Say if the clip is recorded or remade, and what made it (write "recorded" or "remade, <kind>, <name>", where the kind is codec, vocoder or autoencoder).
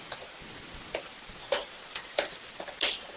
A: recorded